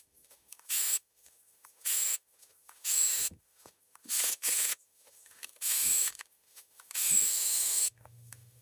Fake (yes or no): yes